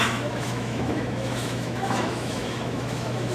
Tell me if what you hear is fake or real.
fake